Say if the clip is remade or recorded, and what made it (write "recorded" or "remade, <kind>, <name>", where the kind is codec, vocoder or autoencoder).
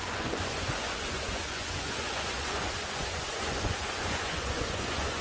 remade, vocoder, Vocos